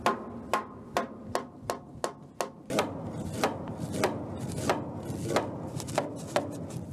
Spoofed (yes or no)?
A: no